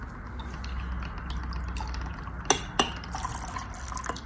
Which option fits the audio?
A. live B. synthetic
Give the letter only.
A